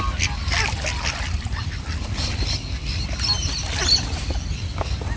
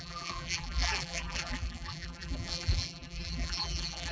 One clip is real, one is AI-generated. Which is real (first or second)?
first